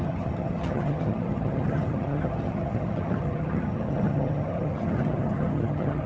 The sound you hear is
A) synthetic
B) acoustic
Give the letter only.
A